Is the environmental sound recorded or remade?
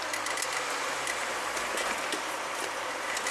recorded